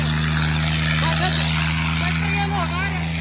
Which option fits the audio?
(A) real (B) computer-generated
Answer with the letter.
A